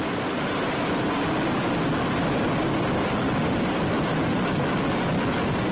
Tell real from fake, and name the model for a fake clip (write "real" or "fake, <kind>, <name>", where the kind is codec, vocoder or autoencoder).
real